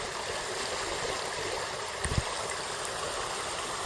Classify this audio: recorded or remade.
recorded